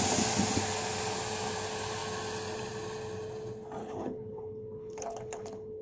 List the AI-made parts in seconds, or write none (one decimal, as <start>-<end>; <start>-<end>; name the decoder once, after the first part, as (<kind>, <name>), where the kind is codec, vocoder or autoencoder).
3.8-5.8 (codec, HILCodec)